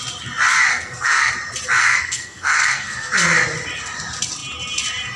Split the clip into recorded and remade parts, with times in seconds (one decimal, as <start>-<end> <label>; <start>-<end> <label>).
0.0-0.7 recorded; 0.7-1.3 remade; 1.3-1.8 recorded; 1.8-3.1 remade; 3.1-5.2 recorded